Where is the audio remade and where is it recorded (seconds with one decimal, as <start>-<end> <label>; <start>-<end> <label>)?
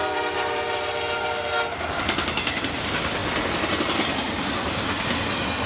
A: 0.0-5.7 recorded